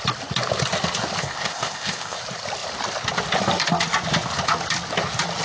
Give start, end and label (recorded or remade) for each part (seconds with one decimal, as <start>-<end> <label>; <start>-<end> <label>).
0.0-1.2 recorded; 1.2-2.2 remade; 2.2-5.4 recorded